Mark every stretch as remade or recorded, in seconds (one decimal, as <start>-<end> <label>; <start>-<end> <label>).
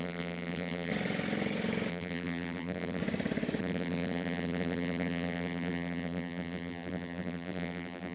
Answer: 0.0-0.9 remade; 0.9-1.9 recorded; 1.9-3.0 remade; 3.0-3.6 recorded; 3.6-8.1 remade